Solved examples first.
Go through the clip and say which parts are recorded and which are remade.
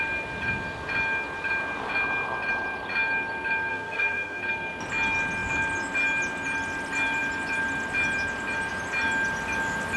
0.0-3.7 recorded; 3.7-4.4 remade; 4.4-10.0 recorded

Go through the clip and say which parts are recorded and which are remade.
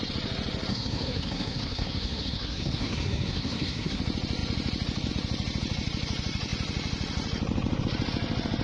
0.0-0.7 recorded; 0.7-4.0 remade; 4.0-8.6 recorded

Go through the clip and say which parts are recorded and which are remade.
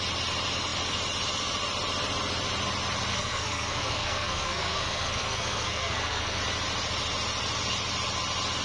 0.0-3.1 recorded; 3.1-6.4 remade; 6.4-8.6 recorded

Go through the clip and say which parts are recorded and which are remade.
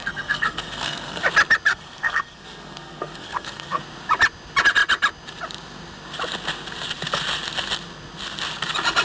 0.0-1.2 remade; 1.2-1.7 recorded; 1.7-3.8 remade; 3.8-9.0 recorded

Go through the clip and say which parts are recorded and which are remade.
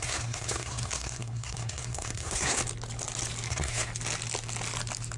0.0-2.6 remade; 2.6-3.5 recorded; 3.5-3.9 remade; 3.9-5.2 recorded